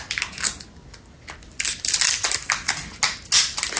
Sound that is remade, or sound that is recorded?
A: recorded